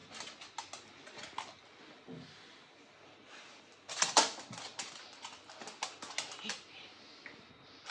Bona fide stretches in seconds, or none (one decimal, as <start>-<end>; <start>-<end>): 0.0-7.9